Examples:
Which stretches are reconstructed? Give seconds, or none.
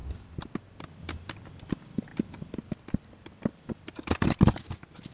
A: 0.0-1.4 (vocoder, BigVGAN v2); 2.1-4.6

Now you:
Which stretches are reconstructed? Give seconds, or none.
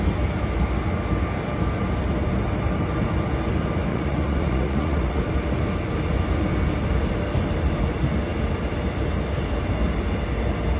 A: 3.9-5.2 (vocoder, Vocos)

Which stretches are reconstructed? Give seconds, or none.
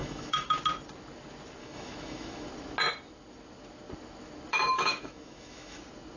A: 0.0-0.6 (autoencoder, DAC-VAE); 1.6-2.5; 4.5-5.8